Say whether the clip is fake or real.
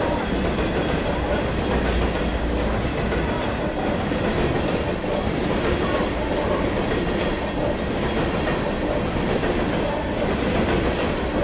real